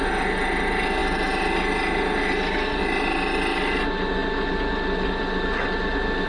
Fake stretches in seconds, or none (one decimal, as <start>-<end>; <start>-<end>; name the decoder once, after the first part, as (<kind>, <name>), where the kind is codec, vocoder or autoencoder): none